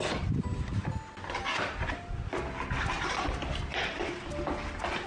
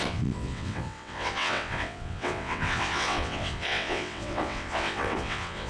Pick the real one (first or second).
first